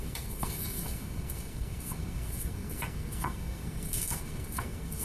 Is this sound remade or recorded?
remade